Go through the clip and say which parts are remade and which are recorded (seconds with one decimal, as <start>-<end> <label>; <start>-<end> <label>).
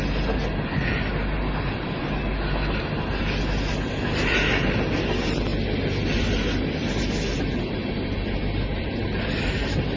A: 0.0-10.0 recorded